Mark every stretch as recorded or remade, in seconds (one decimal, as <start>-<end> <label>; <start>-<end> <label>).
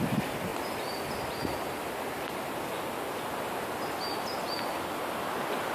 0.0-5.7 recorded